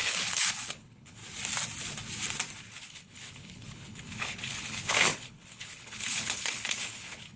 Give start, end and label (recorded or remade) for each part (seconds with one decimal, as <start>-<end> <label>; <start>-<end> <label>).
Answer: 0.0-1.2 remade; 1.2-2.7 recorded; 2.7-7.4 remade